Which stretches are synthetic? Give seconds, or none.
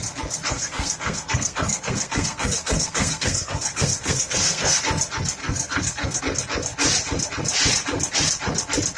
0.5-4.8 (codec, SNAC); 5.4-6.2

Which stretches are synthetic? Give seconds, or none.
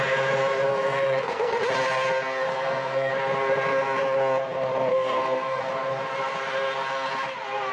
0.7-1.6 (codec, SNAC); 2.5-3.1; 4.9-5.6